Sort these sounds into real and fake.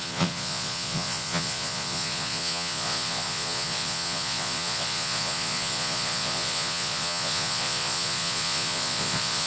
fake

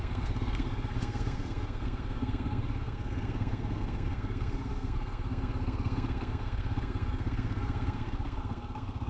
fake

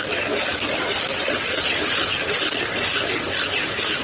real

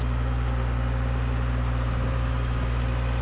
real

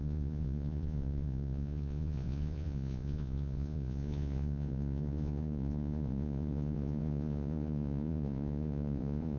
fake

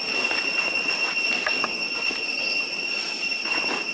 real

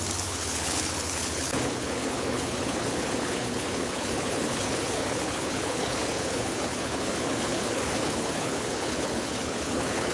fake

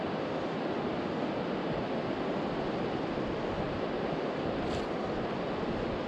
real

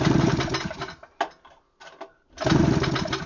real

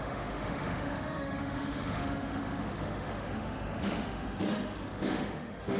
fake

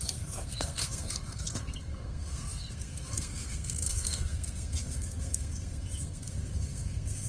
fake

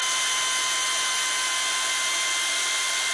real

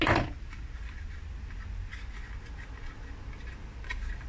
real